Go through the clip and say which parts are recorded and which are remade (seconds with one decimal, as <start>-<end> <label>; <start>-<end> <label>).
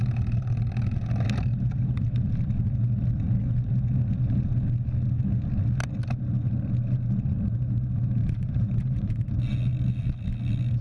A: 0.0-8.2 recorded; 8.2-9.3 remade; 9.3-10.8 recorded